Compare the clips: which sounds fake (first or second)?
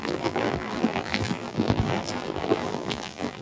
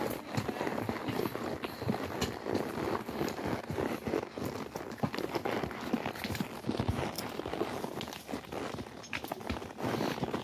first